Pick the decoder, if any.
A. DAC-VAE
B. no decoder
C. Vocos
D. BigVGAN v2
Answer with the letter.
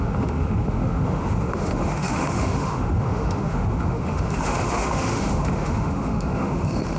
A